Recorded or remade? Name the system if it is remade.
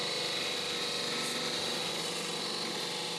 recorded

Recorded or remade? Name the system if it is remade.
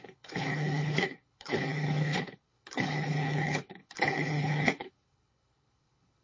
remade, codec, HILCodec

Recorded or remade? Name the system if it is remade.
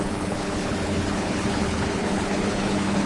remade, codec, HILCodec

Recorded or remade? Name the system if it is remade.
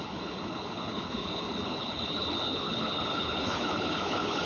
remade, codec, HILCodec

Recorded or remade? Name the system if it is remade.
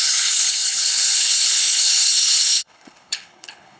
remade, codec, HILCodec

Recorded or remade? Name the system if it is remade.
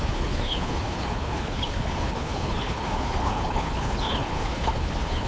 remade, codec, HILCodec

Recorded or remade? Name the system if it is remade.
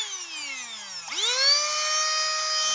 recorded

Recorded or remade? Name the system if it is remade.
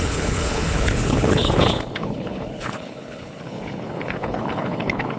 remade, codec, HILCodec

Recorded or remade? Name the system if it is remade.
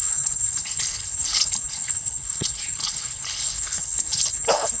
remade, codec, HILCodec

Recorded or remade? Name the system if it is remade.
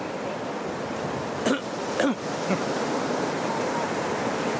recorded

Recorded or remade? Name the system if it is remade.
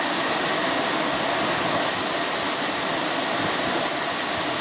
recorded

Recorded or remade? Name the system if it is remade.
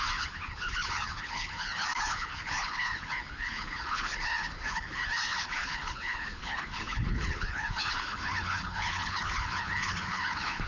remade, codec, HILCodec